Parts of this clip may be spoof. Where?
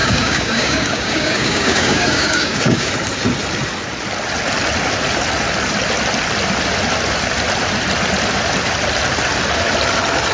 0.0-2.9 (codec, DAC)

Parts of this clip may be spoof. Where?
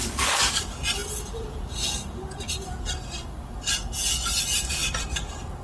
0.0-0.6 (codec, DAC)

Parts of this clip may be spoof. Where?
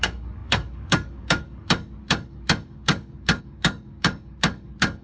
0.0-5.0 (codec, DAC)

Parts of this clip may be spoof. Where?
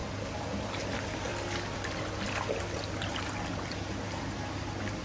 none